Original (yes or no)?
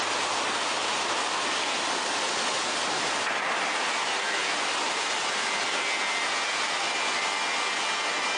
yes